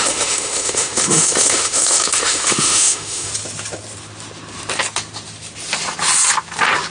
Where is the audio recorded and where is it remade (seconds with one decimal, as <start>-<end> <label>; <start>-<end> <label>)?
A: 0.0-3.3 remade; 3.3-6.9 recorded